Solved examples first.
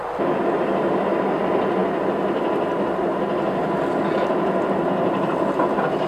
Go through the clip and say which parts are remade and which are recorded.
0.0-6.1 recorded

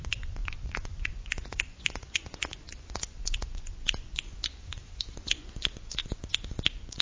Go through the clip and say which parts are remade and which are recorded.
0.0-7.0 remade

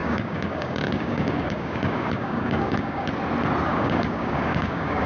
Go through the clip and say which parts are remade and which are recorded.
0.0-3.1 remade; 3.1-3.7 recorded; 3.7-5.1 remade

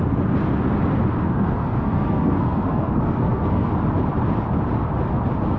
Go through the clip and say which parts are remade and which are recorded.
0.0-1.2 recorded; 1.2-3.7 remade; 3.7-5.6 recorded

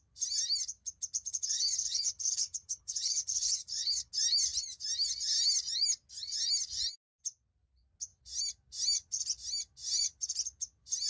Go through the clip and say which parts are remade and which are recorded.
0.0-1.3 recorded; 1.3-4.1 remade; 4.1-11.1 recorded

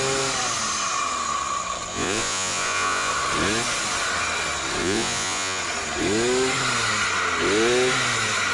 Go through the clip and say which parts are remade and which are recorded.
0.0-1.9 recorded; 1.9-3.1 remade; 3.1-4.8 recorded; 4.8-5.6 remade; 5.6-8.5 recorded